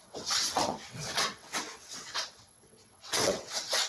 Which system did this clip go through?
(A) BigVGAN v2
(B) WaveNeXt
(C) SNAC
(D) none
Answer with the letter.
B